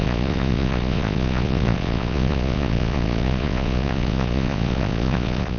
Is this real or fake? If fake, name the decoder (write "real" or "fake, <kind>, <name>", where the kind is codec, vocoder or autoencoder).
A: fake, vocoder, Vocos